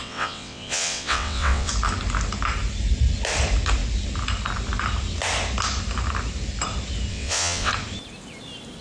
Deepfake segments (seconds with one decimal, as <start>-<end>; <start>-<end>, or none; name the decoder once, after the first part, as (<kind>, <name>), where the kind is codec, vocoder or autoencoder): 0.0-1.7 (vocoder, WaveNeXt); 7.1-7.7